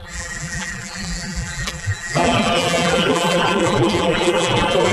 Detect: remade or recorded remade